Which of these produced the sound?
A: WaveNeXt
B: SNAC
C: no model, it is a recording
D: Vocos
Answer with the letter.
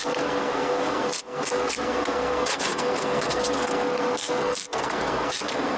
B